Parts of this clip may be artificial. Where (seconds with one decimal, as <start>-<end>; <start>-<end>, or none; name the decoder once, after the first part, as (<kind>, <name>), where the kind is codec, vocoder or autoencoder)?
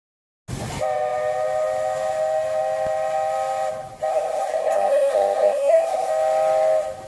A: 4.1-6.1 (codec, SNAC)